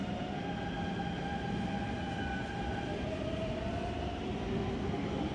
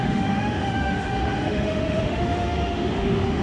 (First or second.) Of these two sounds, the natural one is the first